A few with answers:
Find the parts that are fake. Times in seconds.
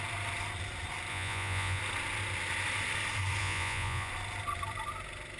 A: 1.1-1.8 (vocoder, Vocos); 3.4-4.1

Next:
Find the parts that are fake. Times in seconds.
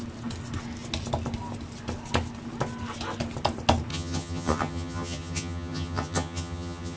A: 3.9-7.0 (vocoder, HiFi-GAN)